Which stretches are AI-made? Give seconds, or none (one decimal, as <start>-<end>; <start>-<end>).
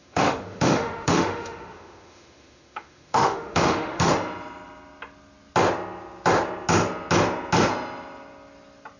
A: 0.0-4.1